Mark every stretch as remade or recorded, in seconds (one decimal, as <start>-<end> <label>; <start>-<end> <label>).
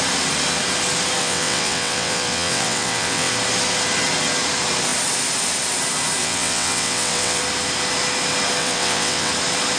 0.0-1.2 recorded; 1.2-3.3 remade; 3.3-6.2 recorded; 6.2-7.4 remade; 7.4-8.6 recorded; 8.6-9.3 remade; 9.3-9.8 recorded